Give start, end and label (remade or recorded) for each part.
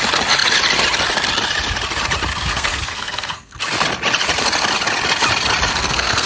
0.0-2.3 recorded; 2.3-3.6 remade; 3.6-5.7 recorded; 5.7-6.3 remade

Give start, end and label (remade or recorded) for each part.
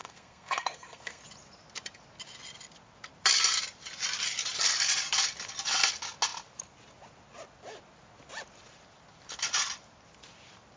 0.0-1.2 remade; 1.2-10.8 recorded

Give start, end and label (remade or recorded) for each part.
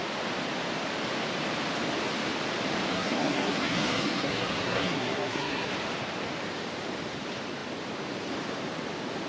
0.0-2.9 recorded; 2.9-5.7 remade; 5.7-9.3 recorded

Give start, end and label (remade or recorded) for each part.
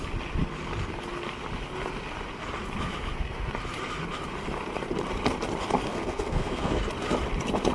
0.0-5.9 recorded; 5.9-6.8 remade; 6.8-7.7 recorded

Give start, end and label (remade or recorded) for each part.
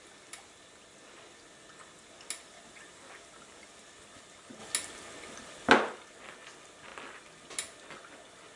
0.0-8.6 recorded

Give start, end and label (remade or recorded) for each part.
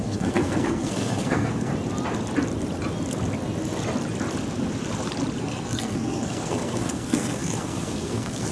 0.0-1.7 remade; 1.7-5.4 recorded; 5.4-8.5 remade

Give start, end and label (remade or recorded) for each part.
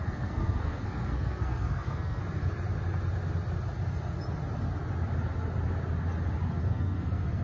0.0-2.2 remade; 2.2-6.6 recorded; 6.6-7.4 remade